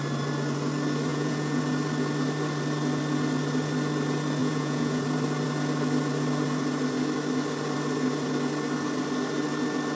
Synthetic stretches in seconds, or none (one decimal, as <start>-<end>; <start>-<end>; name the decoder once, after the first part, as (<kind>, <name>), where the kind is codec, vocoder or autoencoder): 1.1-1.6 (vocoder, Vocos); 4.4-5.0